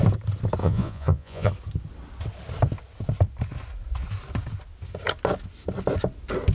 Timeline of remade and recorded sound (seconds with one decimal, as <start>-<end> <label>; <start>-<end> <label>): 0.0-0.6 recorded; 0.6-1.5 remade; 1.5-6.5 recorded